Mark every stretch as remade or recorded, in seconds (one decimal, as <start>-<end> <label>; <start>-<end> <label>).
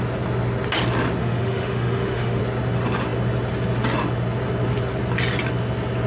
0.0-1.2 recorded; 1.2-2.4 remade; 2.4-6.1 recorded